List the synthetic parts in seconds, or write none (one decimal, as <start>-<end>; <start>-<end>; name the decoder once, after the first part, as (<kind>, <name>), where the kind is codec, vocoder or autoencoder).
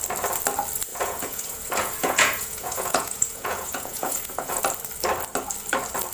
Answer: 0.9-4.6 (vocoder, Vocos)